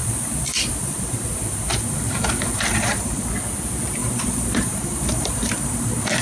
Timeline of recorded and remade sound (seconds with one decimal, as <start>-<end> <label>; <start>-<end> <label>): 0.0-3.3 remade; 3.3-4.0 recorded; 4.0-6.2 remade